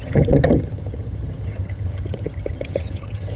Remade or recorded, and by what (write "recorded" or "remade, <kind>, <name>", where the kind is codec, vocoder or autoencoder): remade, vocoder, HiFi-GAN